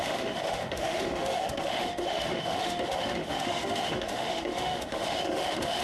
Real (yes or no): no